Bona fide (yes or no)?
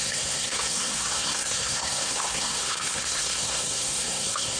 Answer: no